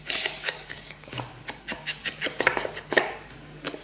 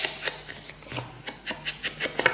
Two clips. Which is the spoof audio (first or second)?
first